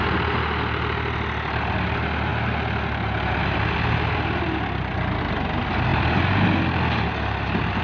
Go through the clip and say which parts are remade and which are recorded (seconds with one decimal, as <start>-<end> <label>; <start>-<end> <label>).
0.0-7.8 recorded